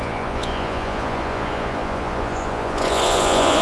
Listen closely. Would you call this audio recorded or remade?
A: remade